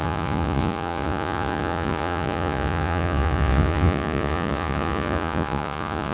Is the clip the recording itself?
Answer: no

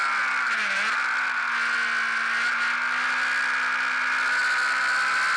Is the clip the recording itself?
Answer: yes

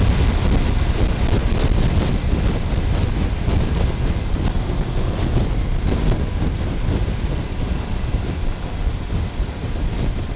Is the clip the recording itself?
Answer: yes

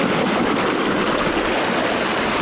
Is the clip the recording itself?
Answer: yes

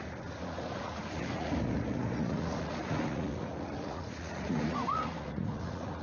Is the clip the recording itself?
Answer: no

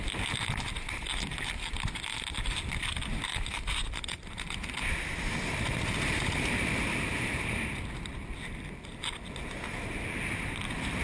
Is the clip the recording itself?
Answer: yes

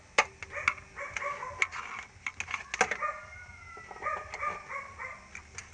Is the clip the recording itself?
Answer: yes